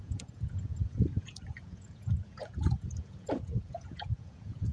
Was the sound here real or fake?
fake